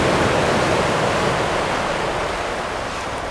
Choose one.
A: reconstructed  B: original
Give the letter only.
B